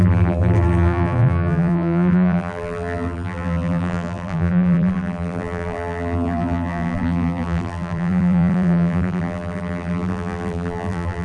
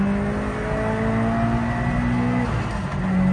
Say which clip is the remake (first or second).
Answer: first